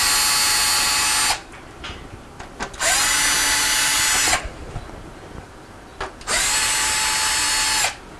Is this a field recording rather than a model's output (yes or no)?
yes